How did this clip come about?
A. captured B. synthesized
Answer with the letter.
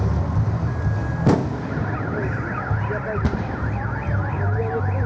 A